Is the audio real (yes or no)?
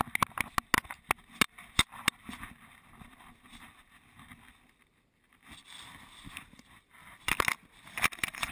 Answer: yes